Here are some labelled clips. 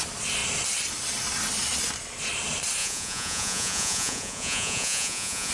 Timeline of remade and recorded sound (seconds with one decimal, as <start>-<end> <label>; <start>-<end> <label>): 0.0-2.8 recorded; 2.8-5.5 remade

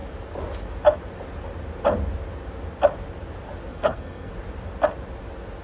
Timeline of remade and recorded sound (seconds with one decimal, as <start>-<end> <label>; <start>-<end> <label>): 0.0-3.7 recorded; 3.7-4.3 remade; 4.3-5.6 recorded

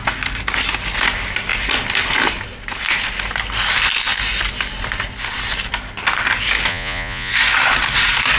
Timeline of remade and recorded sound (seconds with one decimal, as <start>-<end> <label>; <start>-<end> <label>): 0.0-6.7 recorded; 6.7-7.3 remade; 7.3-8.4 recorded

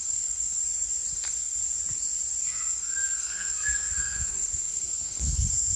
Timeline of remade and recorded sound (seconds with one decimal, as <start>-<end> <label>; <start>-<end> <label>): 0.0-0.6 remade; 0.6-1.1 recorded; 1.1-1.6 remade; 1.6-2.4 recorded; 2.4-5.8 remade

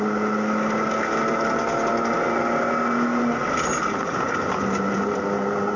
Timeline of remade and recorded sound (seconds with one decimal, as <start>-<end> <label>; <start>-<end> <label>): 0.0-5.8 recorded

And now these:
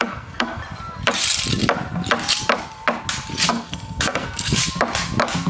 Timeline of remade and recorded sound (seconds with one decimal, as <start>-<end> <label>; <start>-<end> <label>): 0.0-0.6 remade; 0.6-3.5 recorded; 3.5-4.6 remade; 4.6-5.5 recorded

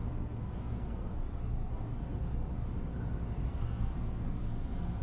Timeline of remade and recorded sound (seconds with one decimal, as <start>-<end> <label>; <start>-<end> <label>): 0.0-2.5 remade; 2.5-3.4 recorded; 3.4-5.0 remade

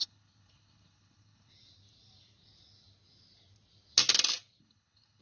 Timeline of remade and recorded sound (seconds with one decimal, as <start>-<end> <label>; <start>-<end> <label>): 0.0-1.5 remade; 1.5-4.6 recorded; 4.6-5.2 remade